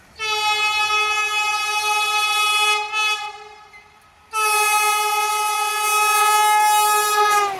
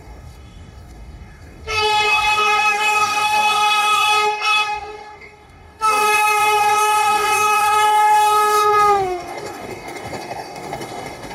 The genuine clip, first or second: first